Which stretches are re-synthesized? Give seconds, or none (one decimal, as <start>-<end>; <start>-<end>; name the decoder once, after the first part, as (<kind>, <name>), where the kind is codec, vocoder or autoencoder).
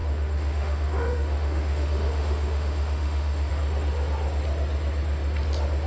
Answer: 0.0-3.5 (autoencoder, DAC-VAE)